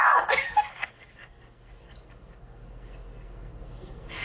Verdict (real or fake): fake